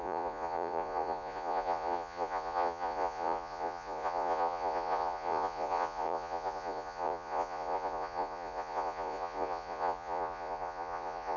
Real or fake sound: fake